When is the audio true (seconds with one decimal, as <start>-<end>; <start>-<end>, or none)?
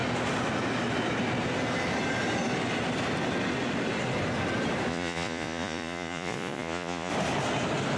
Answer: 0.0-4.9; 7.1-8.0